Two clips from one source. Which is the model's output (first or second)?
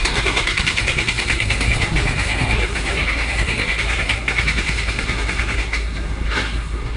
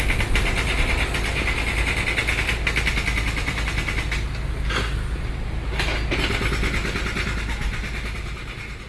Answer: first